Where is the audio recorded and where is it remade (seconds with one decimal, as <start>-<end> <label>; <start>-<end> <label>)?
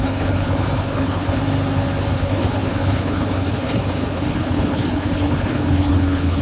0.0-1.4 remade; 1.4-2.1 recorded; 2.1-6.4 remade